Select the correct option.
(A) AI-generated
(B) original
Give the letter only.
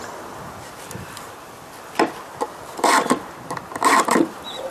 A